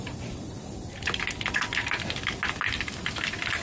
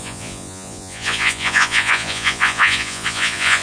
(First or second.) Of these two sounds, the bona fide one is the first